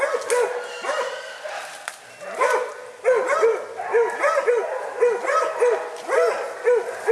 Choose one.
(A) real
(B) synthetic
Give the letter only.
A